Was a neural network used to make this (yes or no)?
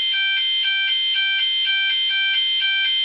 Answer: no